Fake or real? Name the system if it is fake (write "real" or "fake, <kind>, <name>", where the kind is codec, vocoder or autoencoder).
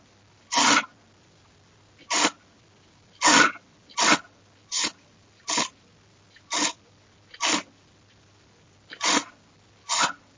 real